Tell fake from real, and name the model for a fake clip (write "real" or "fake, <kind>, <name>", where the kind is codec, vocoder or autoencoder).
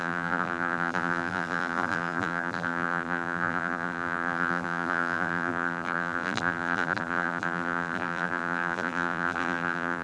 fake, vocoder, BigVGAN v2